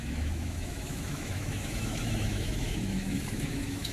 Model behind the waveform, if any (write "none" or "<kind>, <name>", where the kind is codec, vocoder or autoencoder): autoencoder, DAC-VAE